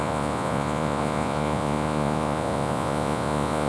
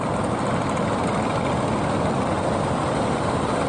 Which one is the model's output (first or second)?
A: first